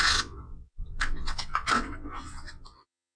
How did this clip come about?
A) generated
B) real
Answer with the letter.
A